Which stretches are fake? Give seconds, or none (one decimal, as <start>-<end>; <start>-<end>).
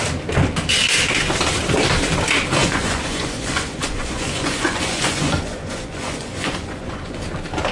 2.6-7.2